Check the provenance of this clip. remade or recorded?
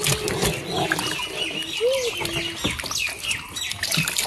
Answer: recorded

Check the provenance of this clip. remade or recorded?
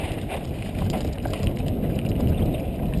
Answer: recorded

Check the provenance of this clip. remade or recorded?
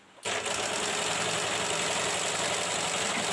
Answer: recorded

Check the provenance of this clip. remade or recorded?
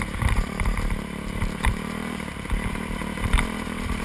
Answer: remade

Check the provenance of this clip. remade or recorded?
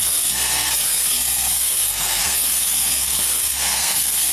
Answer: remade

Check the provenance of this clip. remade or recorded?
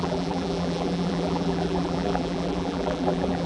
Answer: remade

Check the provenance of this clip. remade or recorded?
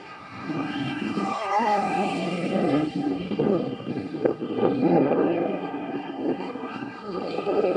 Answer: remade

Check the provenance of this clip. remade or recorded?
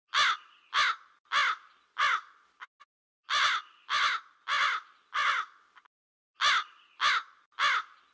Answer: recorded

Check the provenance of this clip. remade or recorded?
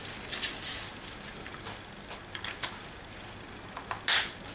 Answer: recorded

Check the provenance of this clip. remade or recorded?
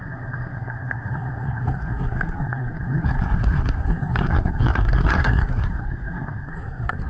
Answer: remade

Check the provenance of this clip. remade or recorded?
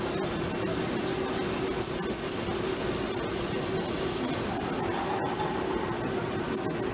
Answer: recorded